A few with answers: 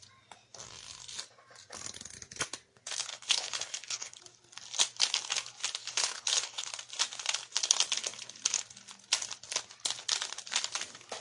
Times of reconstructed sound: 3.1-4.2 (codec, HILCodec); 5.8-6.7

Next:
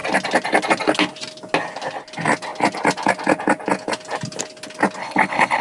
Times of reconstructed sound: 5.0-5.6 (codec, HILCodec)

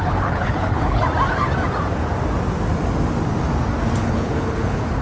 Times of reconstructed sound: 0.0-1.0 (codec, HILCodec); 4.0-5.0